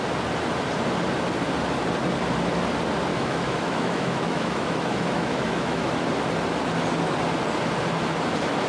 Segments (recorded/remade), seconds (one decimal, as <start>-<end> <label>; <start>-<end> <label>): 0.0-3.1 recorded; 3.1-6.1 remade; 6.1-8.7 recorded